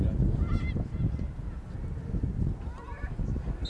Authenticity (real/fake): real